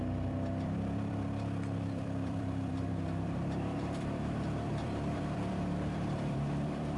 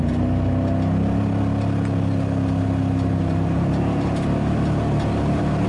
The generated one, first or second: first